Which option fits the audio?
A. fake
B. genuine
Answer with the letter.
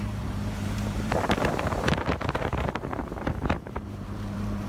A